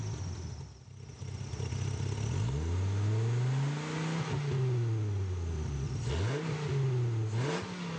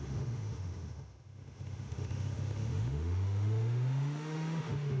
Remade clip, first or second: second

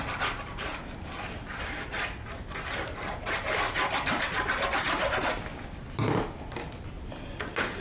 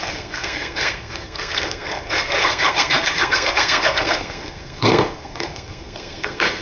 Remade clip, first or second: second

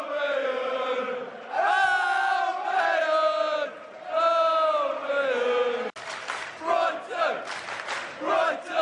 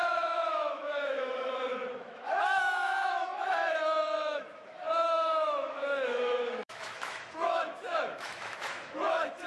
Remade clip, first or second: second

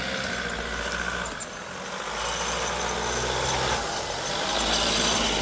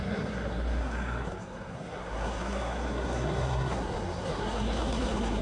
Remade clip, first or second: second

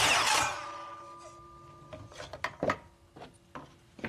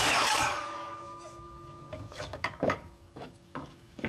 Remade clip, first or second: second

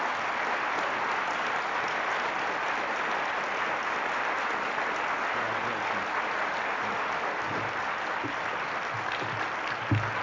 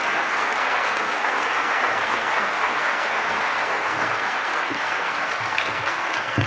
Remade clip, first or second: second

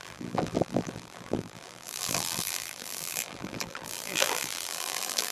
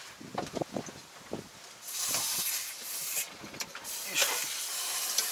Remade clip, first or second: first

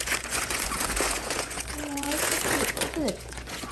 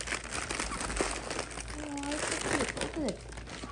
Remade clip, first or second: first